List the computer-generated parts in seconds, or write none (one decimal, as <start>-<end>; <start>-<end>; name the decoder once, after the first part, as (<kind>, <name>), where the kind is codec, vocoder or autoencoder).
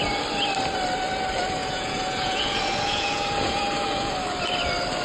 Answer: 1.6-4.1 (vocoder, Vocos)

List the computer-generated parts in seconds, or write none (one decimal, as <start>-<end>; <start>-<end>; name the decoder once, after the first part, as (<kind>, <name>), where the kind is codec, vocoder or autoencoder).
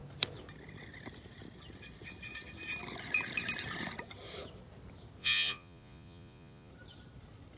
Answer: 5.2-6.7 (vocoder, Vocos)